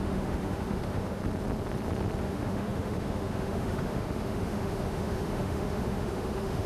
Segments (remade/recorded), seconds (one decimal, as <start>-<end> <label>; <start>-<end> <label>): 0.0-1.2 remade; 1.2-2.2 recorded; 2.2-6.7 remade